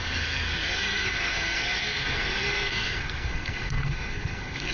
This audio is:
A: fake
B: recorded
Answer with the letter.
A